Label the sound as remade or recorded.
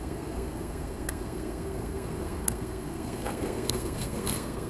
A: remade